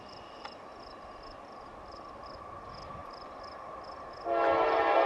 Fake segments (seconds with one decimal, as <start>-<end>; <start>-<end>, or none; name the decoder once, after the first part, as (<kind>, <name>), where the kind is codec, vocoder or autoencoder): none